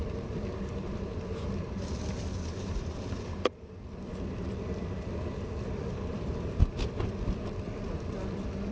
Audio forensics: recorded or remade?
remade